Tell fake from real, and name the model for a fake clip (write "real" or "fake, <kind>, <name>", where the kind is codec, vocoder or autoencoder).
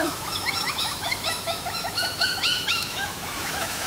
fake, autoencoder, DAC-VAE